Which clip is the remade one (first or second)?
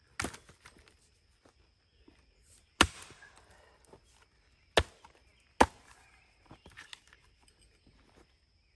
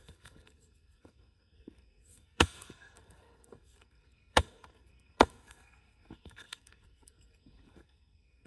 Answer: second